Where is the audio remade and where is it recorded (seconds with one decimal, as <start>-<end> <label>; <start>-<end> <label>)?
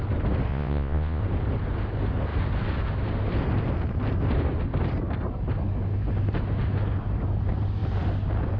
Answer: 0.0-0.5 recorded; 0.5-1.2 remade; 1.2-8.6 recorded